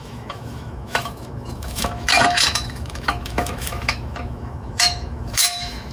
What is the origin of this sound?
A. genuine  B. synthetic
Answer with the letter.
B